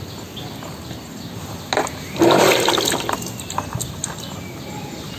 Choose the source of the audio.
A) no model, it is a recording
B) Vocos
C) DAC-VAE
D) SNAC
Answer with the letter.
A